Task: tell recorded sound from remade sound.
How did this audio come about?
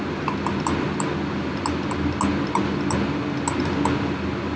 recorded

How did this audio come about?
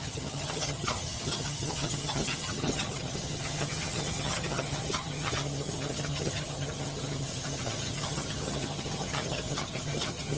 remade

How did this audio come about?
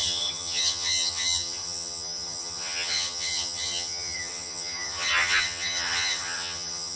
remade